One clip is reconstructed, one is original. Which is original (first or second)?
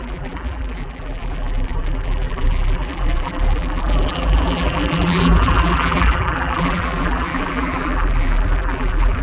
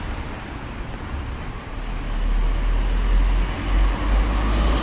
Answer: second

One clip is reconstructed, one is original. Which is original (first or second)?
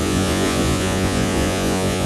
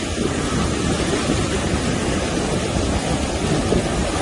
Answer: second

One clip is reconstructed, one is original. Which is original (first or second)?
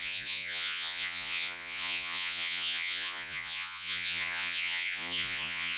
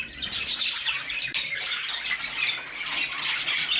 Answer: second